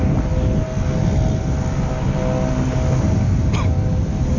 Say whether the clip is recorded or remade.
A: recorded